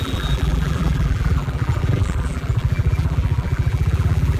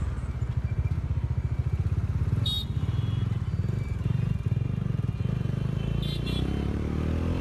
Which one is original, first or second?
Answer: second